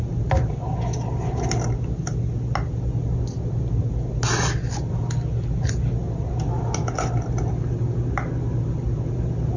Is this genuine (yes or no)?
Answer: yes